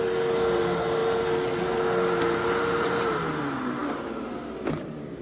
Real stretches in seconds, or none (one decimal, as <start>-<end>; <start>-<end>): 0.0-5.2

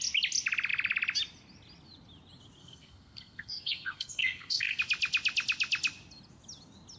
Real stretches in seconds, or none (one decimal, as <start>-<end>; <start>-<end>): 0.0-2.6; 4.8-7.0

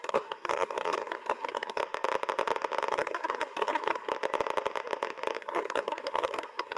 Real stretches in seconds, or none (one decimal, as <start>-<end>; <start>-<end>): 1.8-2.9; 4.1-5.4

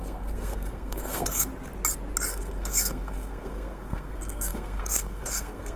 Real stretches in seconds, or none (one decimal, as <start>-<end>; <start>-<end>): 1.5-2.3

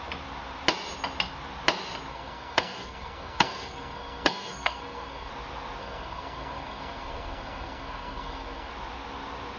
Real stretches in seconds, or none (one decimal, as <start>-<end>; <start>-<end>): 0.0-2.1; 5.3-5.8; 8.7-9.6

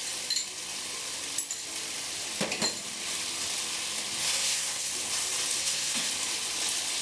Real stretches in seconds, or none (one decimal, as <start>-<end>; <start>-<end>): 0.0-4.2; 4.9-5.6; 6.1-7.0

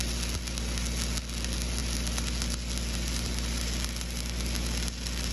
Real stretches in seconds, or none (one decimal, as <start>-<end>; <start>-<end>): 0.0-5.3